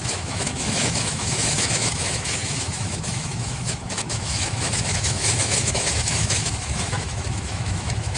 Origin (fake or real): fake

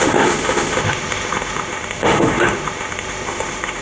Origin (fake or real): fake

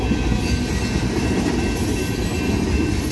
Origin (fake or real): real